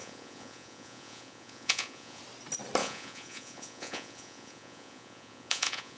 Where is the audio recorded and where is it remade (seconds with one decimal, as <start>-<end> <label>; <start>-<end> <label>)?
0.0-2.2 remade; 2.2-2.8 recorded; 2.8-6.0 remade